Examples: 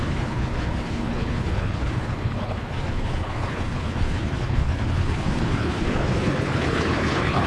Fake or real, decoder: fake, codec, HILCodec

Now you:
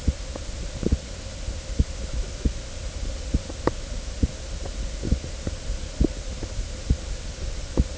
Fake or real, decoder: real